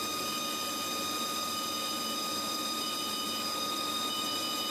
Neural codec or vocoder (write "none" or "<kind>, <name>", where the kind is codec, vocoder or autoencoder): none